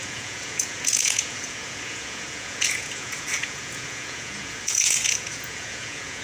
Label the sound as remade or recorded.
remade